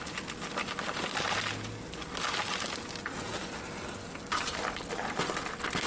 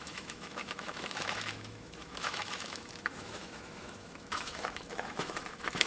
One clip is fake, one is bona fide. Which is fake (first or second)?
second